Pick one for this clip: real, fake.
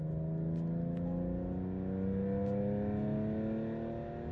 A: real